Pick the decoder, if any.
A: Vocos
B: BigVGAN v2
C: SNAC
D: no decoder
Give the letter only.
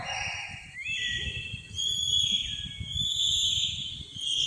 D